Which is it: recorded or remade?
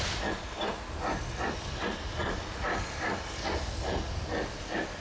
recorded